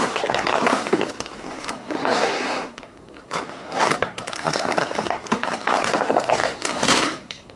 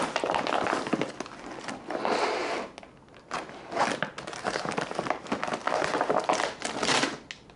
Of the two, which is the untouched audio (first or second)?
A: second